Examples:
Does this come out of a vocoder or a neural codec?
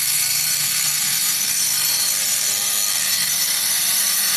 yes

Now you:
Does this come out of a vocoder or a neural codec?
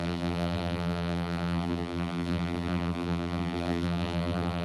yes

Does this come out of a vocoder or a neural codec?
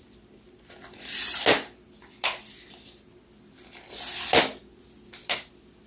no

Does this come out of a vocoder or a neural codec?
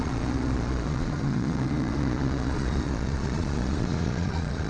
yes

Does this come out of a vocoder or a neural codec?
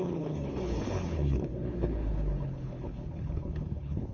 yes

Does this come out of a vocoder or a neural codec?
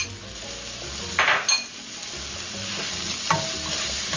no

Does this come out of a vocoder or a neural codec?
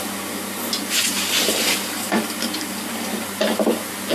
no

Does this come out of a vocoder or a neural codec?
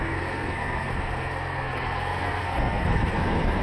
yes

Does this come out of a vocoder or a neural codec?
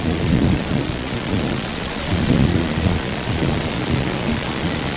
yes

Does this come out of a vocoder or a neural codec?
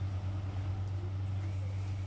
no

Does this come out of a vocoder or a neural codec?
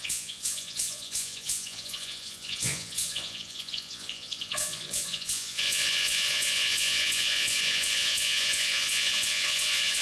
yes